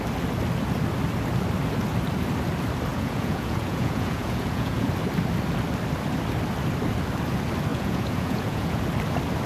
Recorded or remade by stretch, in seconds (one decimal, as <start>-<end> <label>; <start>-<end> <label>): 0.0-2.9 recorded; 2.9-4.9 remade; 4.9-7.7 recorded; 7.7-8.8 remade; 8.8-9.5 recorded